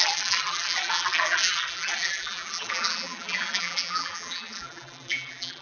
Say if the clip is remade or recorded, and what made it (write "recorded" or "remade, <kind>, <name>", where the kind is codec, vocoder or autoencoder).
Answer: remade, vocoder, BigVGAN v2